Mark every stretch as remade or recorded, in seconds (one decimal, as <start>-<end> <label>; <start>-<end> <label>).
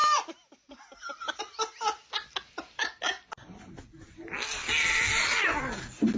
0.0-6.2 recorded